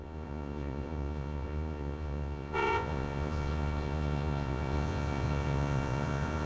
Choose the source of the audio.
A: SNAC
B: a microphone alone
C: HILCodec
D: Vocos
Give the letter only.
D